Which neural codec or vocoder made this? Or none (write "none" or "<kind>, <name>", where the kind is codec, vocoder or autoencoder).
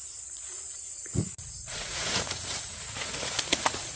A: vocoder, Vocos